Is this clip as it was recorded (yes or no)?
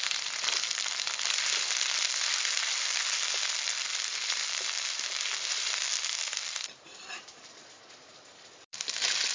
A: no